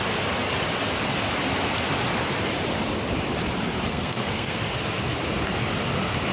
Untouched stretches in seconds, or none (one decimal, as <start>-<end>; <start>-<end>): 0.0-3.9; 4.6-6.3